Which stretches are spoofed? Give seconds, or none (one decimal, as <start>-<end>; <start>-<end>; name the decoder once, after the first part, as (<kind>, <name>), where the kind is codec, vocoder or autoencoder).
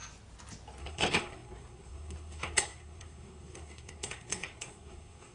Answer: 0.8-5.3 (codec, SNAC)